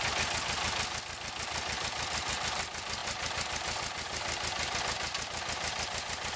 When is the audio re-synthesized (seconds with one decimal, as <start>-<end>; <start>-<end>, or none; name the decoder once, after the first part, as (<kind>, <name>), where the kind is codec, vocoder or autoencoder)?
none